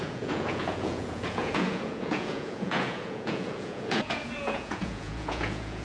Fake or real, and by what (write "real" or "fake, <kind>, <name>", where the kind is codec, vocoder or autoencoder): fake, vocoder, Vocos